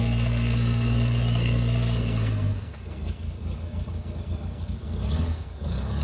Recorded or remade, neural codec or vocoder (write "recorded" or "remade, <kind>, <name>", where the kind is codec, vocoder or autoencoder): remade, codec, SNAC